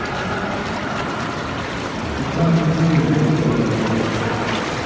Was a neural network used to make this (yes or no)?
no